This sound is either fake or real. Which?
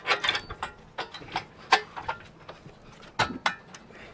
real